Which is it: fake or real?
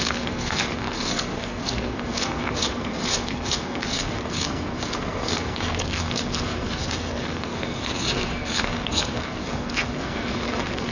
fake